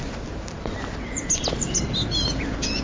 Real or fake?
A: real